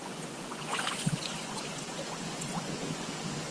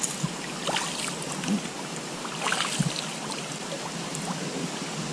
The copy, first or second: first